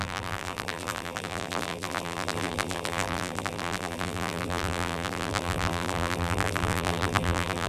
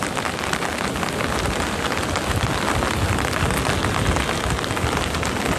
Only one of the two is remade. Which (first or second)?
first